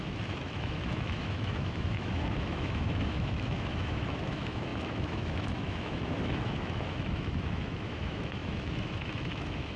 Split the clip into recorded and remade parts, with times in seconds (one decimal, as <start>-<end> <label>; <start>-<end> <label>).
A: 0.0-9.8 remade